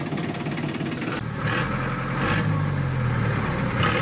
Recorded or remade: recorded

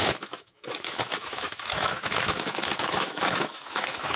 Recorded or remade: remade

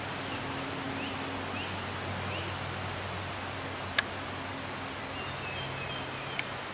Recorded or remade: recorded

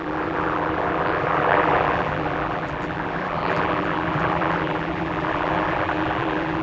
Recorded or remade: remade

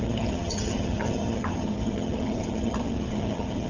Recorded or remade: remade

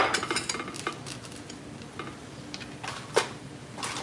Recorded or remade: recorded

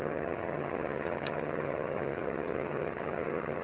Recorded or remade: remade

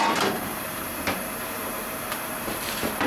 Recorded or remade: remade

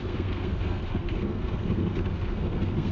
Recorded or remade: remade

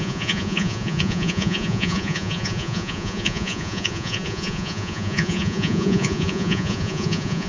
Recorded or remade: remade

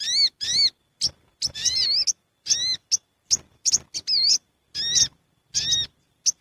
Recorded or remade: recorded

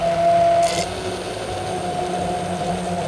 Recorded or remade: recorded